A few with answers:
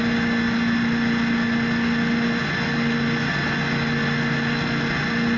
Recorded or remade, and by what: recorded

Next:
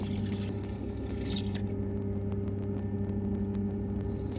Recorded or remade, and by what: recorded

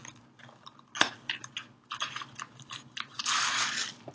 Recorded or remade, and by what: recorded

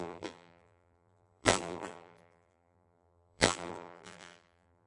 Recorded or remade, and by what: remade, vocoder, BigVGAN v2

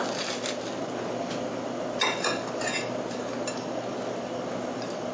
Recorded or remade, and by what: recorded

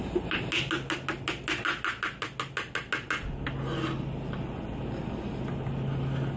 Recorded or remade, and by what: recorded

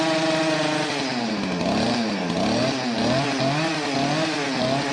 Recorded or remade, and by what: recorded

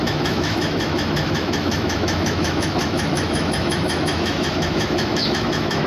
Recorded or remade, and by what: remade, autoencoder, DAC-VAE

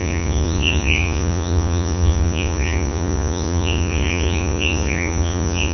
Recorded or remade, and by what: remade, vocoder, Vocos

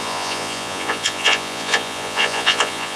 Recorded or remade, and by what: remade, vocoder, Vocos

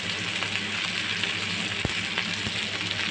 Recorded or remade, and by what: recorded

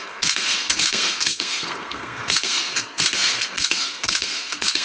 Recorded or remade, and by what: remade, codec, SNAC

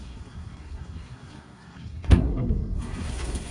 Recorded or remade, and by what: remade, codec, SNAC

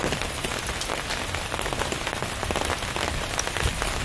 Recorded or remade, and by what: recorded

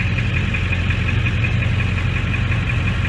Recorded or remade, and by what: recorded